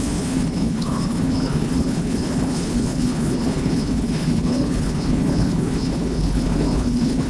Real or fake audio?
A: fake